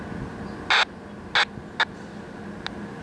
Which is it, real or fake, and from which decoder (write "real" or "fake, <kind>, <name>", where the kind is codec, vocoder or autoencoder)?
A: real